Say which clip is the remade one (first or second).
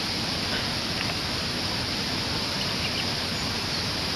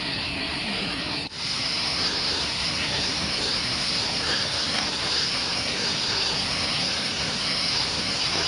second